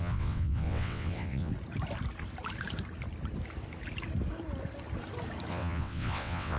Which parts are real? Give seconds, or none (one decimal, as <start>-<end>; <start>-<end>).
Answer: 1.5-5.5